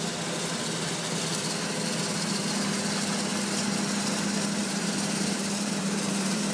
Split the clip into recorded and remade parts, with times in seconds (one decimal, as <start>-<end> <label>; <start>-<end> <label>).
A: 0.0-4.6 recorded; 4.6-6.5 remade